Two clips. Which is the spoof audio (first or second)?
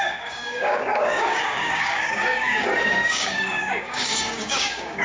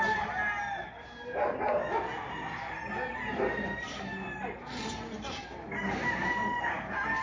first